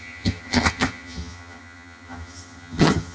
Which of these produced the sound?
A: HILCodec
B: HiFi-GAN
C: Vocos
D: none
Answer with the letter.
B